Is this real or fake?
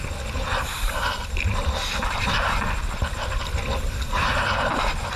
real